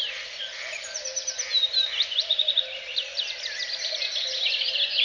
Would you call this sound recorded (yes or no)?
yes